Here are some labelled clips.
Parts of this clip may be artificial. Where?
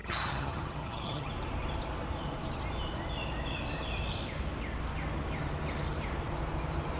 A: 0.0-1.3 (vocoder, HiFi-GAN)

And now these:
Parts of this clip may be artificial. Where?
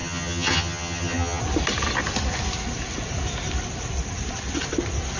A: 0.0-1.4 (vocoder, HiFi-GAN)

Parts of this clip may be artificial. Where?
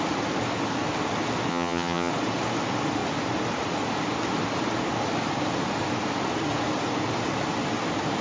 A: 1.5-2.1 (vocoder, HiFi-GAN)